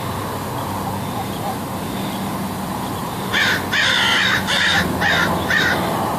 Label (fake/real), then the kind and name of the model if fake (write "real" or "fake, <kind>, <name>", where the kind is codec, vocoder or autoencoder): real